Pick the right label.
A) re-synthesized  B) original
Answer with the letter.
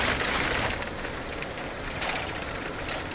A